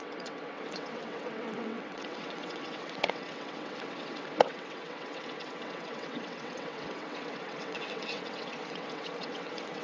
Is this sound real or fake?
fake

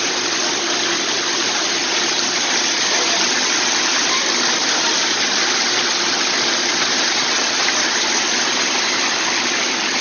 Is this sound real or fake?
fake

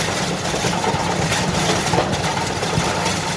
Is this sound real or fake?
real